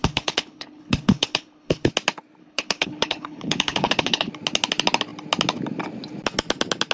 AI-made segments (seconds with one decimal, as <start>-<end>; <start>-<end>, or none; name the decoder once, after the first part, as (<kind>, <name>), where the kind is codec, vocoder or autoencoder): 0.0-1.9 (codec, HILCodec); 2.4-4.3